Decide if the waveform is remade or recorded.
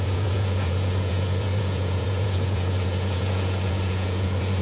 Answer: remade